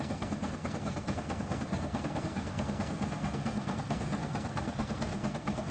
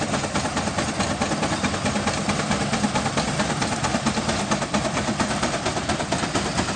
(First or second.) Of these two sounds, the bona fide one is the second